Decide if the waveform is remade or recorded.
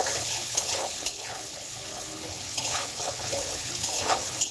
remade